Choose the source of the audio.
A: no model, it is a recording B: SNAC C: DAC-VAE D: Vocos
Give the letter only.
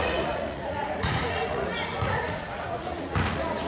D